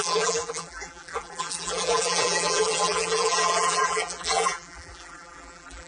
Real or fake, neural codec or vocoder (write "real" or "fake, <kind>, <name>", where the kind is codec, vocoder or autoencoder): fake, vocoder, BigVGAN v2